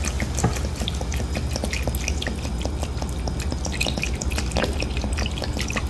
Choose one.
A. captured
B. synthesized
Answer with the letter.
A